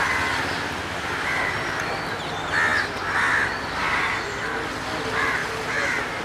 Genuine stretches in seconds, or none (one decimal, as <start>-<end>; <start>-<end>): 0.0-6.2